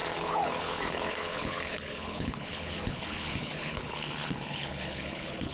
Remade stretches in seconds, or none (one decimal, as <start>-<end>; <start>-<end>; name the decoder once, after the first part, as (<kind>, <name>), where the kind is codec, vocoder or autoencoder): 0.0-5.5 (codec, HILCodec)